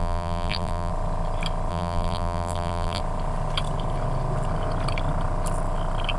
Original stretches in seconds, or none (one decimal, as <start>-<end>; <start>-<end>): 0.9-1.7; 3.0-6.2